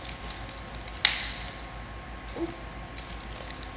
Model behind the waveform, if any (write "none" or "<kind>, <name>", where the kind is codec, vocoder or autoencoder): none